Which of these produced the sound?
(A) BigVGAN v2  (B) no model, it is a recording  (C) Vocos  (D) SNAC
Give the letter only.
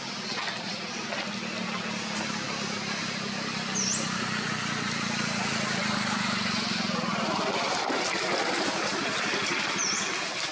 B